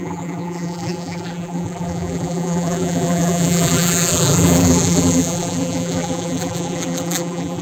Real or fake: fake